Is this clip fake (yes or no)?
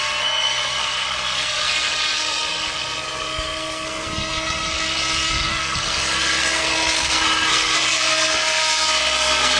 yes